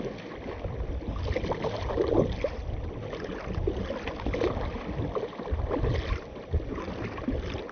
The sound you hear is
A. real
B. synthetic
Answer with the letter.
A